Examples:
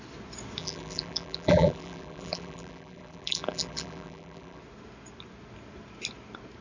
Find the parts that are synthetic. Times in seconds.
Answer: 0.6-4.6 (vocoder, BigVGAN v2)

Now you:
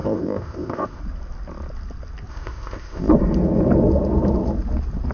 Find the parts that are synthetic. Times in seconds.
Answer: 0.0-1.0 (codec, ZipCodec); 2.3-3.1

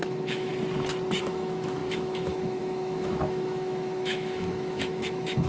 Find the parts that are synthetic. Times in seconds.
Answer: 0.0-0.5 (autoencoder, DAC-VAE); 1.2-5.5

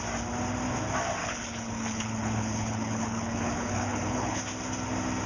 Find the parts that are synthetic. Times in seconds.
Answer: 1.2-4.4 (codec, HILCodec)

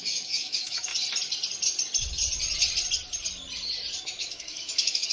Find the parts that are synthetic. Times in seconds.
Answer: 0.0-0.9 (autoencoder, DAC-VAE); 4.0-5.1

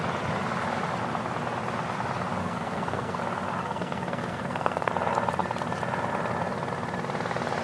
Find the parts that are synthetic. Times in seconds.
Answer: 2.4-3.2 (codec, SNAC); 3.6-4.9

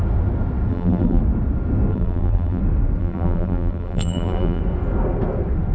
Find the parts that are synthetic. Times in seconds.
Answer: 0.7-1.2 (vocoder, BigVGAN v2); 1.9-2.6; 3.0-4.6

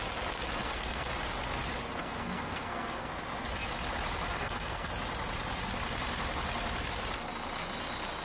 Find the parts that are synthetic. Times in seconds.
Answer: 0.6-1.1 (codec, SNAC); 2.0-3.1; 4.4-4.9